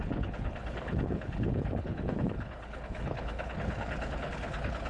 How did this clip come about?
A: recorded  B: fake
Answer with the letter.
B